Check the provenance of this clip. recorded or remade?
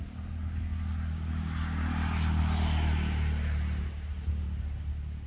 recorded